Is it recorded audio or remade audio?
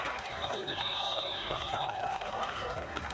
remade